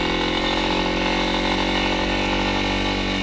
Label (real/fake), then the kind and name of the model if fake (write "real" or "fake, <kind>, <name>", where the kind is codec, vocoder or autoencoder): real